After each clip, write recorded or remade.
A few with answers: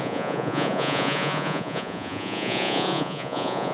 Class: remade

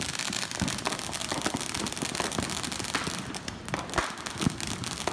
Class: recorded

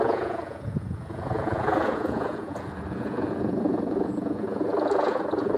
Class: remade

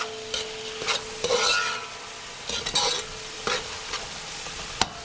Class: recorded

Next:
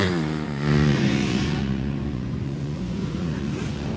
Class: remade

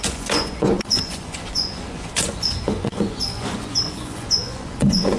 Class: remade